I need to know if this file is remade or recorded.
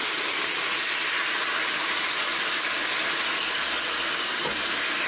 recorded